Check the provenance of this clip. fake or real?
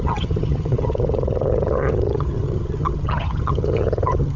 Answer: fake